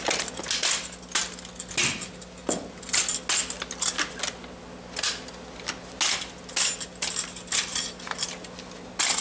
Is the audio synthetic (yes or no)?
no